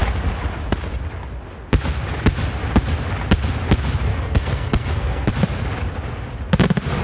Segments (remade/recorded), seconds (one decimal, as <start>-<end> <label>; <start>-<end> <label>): 0.0-4.1 recorded; 4.1-5.3 remade; 5.3-7.0 recorded